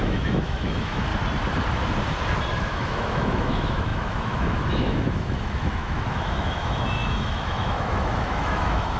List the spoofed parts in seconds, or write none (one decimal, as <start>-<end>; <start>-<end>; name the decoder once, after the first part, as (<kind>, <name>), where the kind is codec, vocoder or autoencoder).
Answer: 0.0-1.1 (autoencoder, DAC-VAE); 2.6-9.0